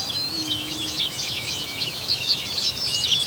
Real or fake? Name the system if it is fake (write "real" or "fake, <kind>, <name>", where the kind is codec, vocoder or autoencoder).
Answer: fake, autoencoder, DAC-VAE